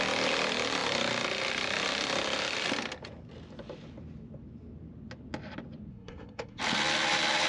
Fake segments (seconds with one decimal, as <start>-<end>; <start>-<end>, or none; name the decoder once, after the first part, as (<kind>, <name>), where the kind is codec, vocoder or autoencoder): 5.9-6.6 (codec, SNAC)